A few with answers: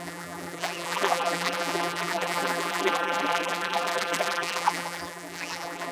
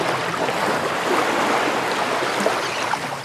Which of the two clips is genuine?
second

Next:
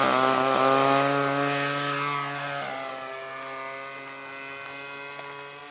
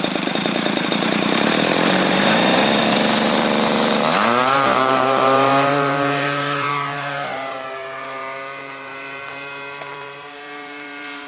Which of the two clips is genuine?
first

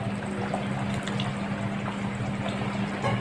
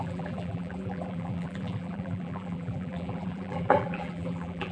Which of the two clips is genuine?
first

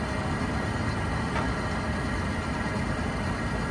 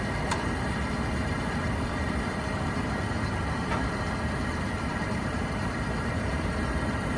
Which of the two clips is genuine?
first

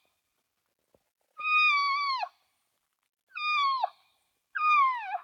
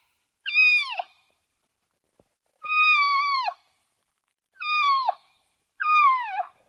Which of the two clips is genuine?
first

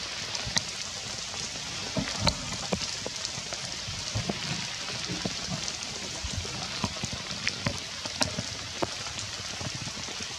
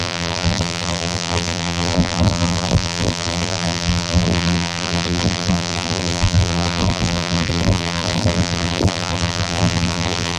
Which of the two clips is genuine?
first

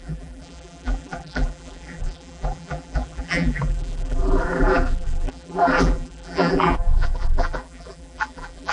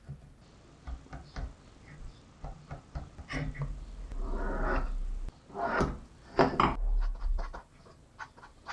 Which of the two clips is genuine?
second